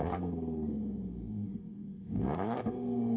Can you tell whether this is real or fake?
fake